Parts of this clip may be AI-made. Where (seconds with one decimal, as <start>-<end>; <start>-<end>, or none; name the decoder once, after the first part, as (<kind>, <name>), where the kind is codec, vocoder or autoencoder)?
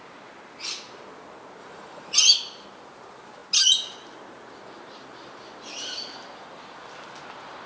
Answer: 1.6-2.2 (vocoder, Vocos)